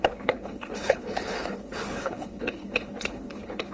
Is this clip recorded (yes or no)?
no